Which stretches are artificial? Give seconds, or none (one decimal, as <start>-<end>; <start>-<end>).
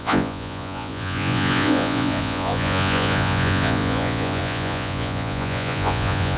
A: 0.0-6.4